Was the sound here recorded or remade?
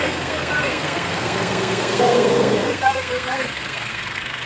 remade